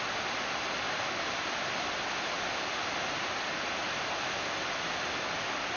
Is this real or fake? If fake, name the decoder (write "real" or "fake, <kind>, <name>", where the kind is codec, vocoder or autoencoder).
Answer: real